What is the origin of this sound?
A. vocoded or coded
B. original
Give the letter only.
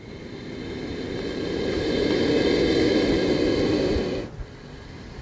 B